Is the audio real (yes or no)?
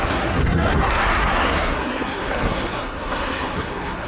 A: no